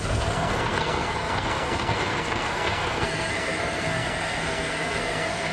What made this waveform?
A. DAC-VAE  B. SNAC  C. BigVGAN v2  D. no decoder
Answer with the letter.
B